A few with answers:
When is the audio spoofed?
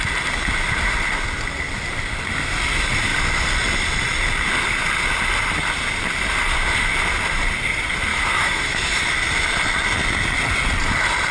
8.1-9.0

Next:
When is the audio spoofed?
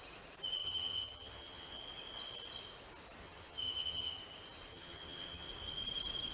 0.6-1.8; 3.2-4.2; 4.7-5.5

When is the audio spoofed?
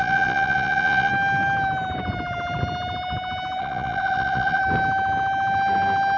0.0-1.1; 3.6-4.6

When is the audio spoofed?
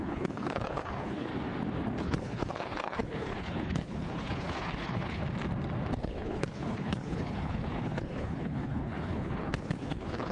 0.0-1.3; 2.0-5.2; 6.0-10.3